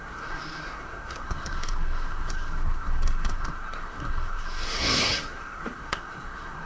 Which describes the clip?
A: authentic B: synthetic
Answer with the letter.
B